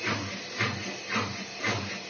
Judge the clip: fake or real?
real